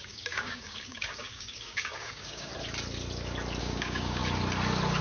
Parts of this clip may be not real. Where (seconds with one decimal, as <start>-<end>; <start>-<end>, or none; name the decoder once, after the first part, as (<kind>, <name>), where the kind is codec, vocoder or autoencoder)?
0.0-2.5 (codec, DAC); 3.6-4.2